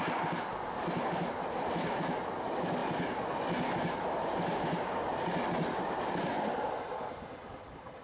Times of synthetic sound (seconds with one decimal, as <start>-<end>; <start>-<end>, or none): none